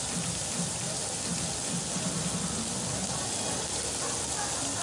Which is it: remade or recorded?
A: recorded